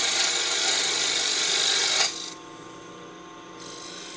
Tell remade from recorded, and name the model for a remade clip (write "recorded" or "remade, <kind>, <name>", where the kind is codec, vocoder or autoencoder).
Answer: recorded